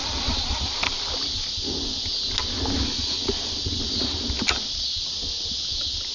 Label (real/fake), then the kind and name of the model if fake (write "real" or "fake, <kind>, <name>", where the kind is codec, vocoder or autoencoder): real